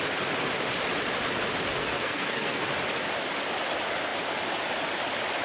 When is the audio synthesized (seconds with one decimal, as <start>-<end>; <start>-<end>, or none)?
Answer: 1.8-2.6